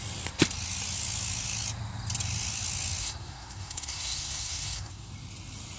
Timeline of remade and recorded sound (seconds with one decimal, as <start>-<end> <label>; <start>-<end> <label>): 0.0-3.0 recorded; 3.0-5.1 remade; 5.1-5.8 recorded